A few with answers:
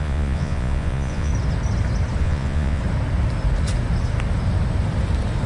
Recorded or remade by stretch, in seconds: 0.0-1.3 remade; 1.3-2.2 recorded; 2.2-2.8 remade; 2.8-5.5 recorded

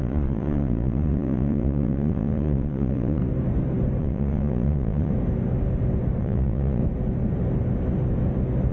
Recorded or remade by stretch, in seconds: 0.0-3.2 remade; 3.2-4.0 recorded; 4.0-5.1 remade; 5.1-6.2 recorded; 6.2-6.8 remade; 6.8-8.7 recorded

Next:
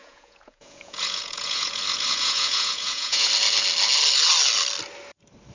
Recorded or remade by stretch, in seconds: 0.0-3.3 remade; 3.3-5.5 recorded

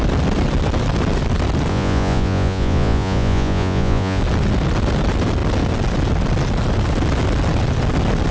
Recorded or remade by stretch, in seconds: 0.0-1.7 recorded; 1.7-4.2 remade; 4.2-8.3 recorded